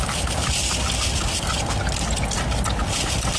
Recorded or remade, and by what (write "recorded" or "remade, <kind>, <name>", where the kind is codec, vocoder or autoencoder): recorded